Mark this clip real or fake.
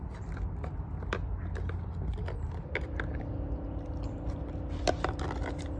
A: real